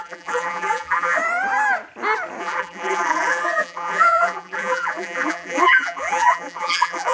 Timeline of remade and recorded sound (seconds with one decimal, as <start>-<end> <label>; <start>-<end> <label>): 0.0-1.2 remade; 1.2-2.4 recorded; 2.4-7.1 remade